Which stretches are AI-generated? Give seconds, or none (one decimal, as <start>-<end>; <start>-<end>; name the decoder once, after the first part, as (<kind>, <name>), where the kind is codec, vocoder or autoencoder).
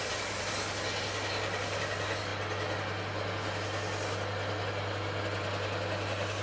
none